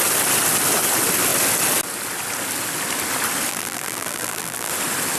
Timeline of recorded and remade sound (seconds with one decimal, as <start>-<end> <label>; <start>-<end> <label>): 0.0-3.5 recorded; 3.5-4.7 remade; 4.7-5.2 recorded